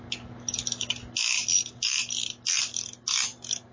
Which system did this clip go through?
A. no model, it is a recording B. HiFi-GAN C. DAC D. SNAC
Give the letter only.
A